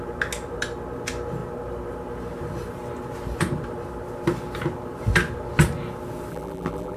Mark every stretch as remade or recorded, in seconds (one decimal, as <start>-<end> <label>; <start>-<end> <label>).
0.0-6.3 recorded; 6.3-7.0 remade